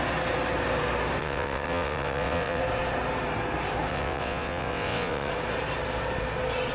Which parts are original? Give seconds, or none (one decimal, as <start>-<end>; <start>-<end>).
0.0-1.2; 2.6-3.9; 5.3-6.7

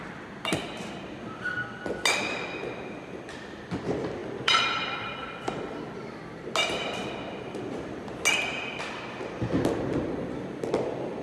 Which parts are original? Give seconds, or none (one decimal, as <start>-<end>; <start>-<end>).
0.0-11.2

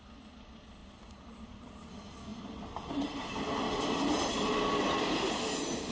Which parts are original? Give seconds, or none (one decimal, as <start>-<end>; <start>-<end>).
0.0-0.8; 1.9-5.9

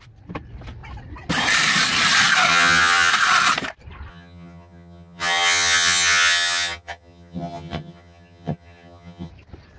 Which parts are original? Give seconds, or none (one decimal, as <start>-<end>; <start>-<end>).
0.0-2.5; 3.1-4.1; 9.3-9.8

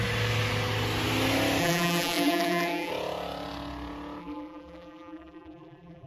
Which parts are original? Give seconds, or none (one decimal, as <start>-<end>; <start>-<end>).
0.0-1.6; 2.9-4.2

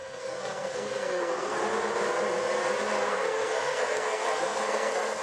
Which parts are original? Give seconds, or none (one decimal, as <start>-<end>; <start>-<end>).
1.6-3.1

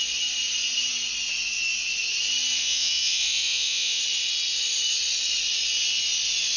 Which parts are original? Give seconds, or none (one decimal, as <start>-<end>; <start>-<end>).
0.0-2.6; 4.0-6.6